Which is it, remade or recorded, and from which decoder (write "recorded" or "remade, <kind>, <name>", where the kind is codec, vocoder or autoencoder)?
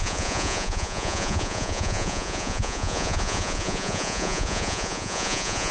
remade, vocoder, Vocos